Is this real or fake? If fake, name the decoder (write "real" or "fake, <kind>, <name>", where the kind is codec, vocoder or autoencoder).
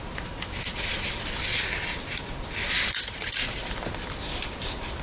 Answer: real